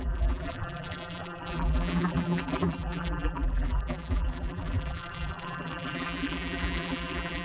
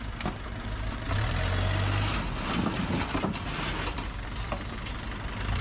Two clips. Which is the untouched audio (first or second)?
second